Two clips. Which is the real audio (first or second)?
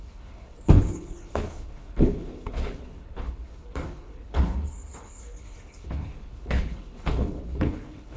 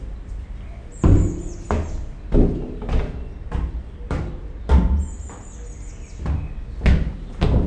second